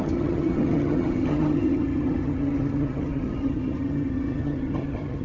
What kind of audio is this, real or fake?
fake